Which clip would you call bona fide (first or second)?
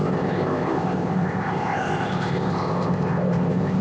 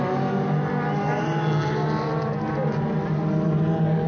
second